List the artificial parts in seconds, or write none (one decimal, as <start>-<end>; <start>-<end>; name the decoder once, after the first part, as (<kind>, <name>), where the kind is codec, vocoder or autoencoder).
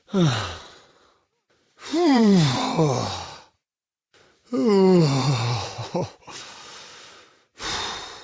1.9-2.5 (vocoder, BigVGAN v2)